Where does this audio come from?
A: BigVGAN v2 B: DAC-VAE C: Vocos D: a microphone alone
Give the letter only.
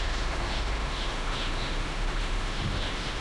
B